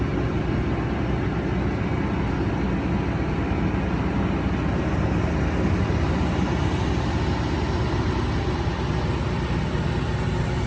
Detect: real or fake real